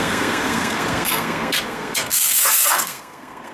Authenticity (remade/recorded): remade